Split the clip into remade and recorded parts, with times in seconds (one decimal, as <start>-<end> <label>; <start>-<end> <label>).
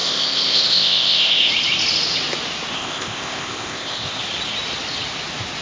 0.0-1.5 remade; 1.5-2.7 recorded; 2.7-4.2 remade; 4.2-5.6 recorded